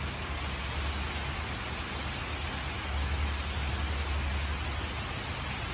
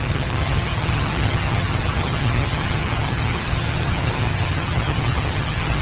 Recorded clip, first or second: first